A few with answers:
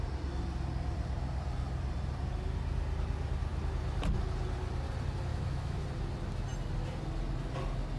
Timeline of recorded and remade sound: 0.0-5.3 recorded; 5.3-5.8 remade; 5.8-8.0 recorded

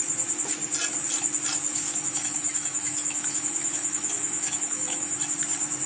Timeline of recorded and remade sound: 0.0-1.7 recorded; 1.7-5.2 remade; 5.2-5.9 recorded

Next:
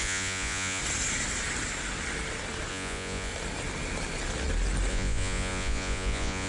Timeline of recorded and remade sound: 0.0-0.8 remade; 0.8-2.7 recorded; 2.7-3.3 remade; 3.3-4.9 recorded; 4.9-6.5 remade

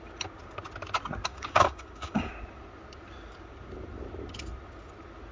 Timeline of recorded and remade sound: 0.0-1.3 recorded; 1.3-2.3 remade; 2.3-5.3 recorded

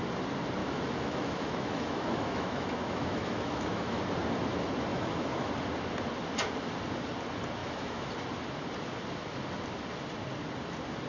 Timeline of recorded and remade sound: 0.0-0.6 recorded; 0.6-4.0 remade; 4.0-4.9 recorded; 4.9-5.5 remade; 5.5-7.6 recorded; 7.6-8.1 remade; 8.1-11.1 recorded

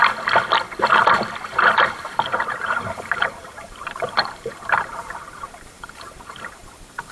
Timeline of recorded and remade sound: 0.0-2.5 recorded; 2.5-7.1 remade

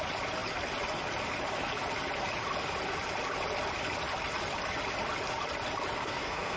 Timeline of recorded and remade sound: 0.0-6.0 recorded; 6.0-6.6 remade